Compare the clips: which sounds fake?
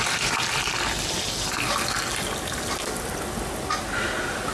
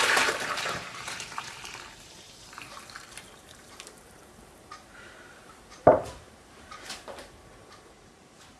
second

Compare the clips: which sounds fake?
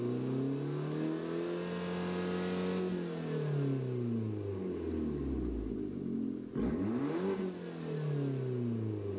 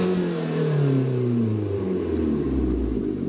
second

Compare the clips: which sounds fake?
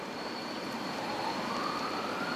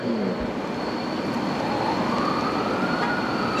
first